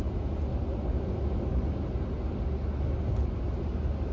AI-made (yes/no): no